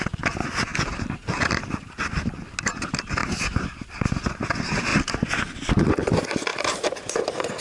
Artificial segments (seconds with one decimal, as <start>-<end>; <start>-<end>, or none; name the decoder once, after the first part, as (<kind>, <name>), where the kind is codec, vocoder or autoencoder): 3.2-4.3 (vocoder, BigVGAN v2); 6.5-7.1

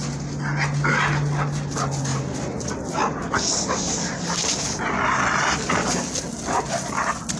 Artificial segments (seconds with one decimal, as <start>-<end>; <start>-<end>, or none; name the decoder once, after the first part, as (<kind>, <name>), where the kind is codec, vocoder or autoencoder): none

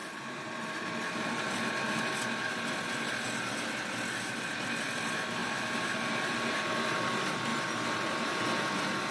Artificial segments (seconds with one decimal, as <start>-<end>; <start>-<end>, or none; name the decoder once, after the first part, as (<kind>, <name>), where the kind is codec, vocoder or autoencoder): 0.0-2.0 (vocoder, BigVGAN v2); 5.4-6.5; 7.5-8.4

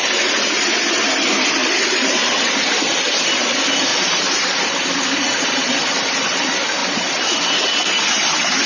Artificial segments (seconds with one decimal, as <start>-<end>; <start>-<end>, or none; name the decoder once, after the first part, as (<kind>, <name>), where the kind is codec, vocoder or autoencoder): 1.6-2.4 (vocoder, BigVGAN v2); 3.9-4.9